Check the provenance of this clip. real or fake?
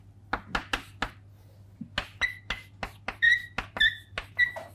real